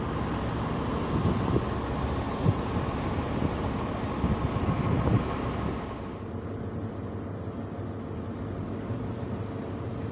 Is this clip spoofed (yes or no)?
no